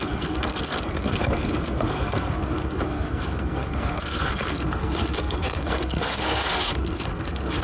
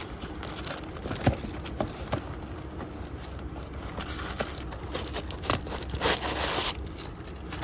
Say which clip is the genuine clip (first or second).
second